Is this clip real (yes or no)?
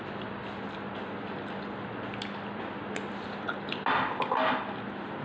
yes